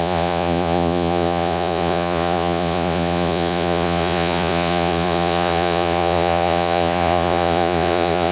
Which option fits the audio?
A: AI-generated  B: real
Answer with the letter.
A